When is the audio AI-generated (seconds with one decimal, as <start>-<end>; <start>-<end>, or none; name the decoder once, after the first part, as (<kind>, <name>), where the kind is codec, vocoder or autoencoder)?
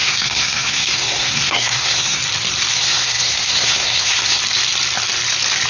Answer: 0.0-2.2 (codec, SNAC); 2.7-4.4